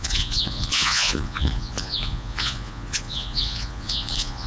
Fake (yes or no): yes